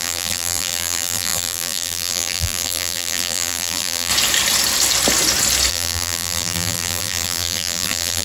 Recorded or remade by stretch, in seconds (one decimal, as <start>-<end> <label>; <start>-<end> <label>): 0.0-4.1 remade; 4.1-5.7 recorded; 5.7-8.2 remade